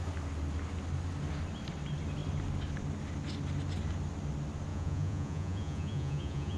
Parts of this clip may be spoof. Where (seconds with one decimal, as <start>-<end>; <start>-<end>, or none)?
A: 4.7-6.6